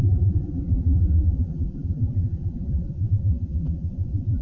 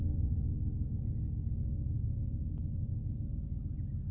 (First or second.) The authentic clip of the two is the second